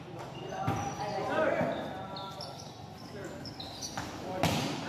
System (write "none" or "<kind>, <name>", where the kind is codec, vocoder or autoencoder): none